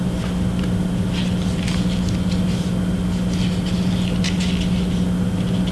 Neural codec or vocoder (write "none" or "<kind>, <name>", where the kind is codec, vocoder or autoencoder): none